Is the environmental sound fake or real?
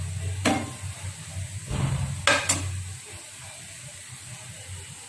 real